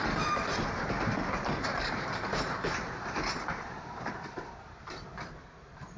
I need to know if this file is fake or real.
fake